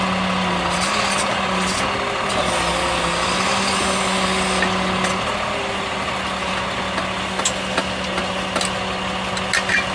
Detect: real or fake real